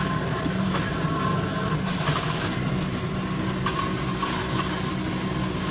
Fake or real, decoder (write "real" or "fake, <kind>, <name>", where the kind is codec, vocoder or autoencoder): real